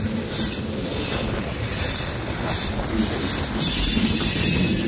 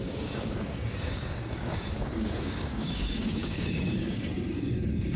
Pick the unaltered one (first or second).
first